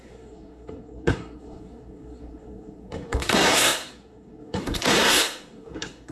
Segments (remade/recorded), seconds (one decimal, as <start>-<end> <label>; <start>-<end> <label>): 0.0-6.1 remade